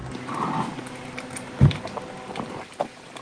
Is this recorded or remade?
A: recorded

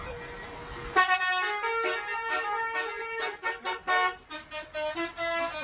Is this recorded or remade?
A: recorded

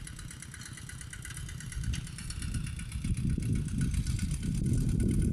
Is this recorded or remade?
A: recorded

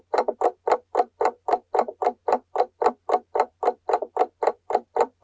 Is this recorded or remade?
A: remade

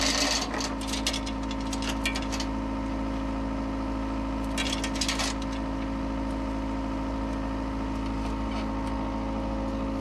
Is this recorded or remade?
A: recorded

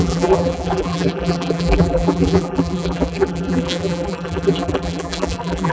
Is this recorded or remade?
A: remade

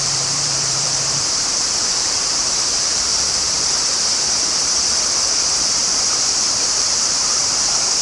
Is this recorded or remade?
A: remade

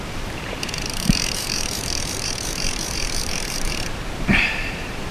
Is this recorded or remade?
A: remade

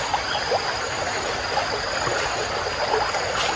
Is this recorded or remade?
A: recorded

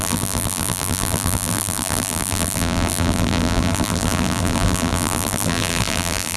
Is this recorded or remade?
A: remade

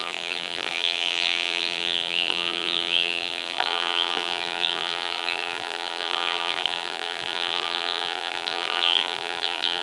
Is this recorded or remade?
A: remade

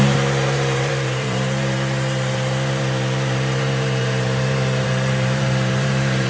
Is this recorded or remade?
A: remade